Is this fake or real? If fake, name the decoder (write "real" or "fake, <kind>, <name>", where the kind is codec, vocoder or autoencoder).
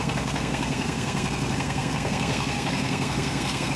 fake, codec, SNAC